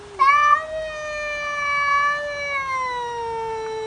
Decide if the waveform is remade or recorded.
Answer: recorded